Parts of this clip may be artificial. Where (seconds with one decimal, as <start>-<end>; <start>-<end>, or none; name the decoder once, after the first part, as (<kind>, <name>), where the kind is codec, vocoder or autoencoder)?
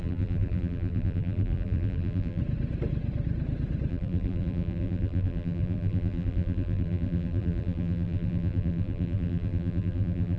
0.0-2.4 (vocoder, BigVGAN v2); 3.9-10.4